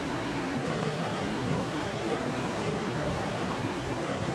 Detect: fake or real fake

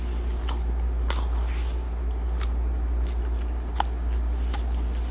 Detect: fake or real real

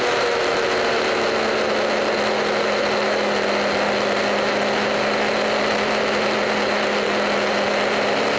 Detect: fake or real real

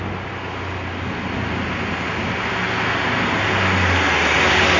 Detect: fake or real real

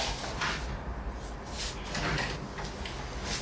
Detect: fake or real real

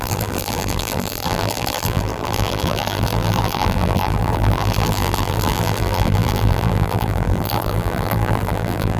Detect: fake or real fake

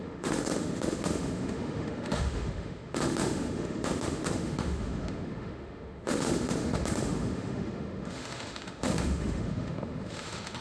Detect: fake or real fake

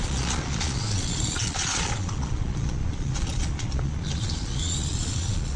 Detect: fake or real fake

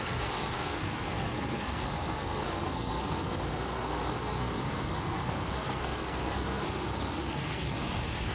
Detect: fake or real fake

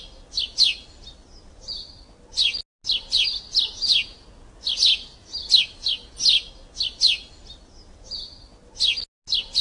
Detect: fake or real real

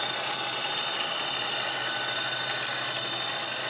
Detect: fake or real real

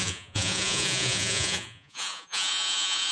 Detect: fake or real fake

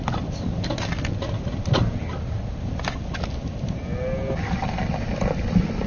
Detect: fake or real real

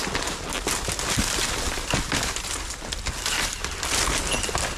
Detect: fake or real real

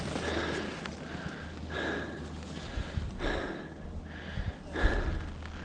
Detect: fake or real real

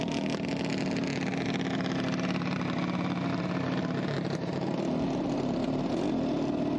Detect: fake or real real